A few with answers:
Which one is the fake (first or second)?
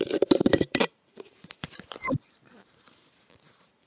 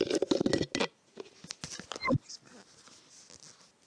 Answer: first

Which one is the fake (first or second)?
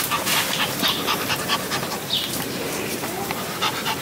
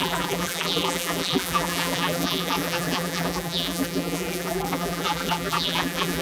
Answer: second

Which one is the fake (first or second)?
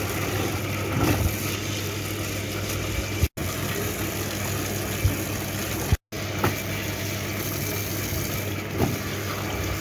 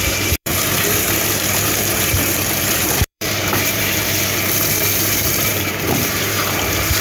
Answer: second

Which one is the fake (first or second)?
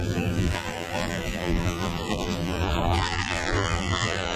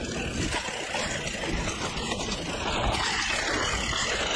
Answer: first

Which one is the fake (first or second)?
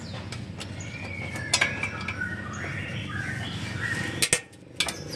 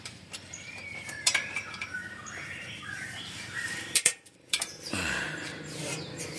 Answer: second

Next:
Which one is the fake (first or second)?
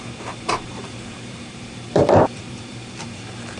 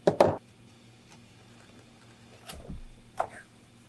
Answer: first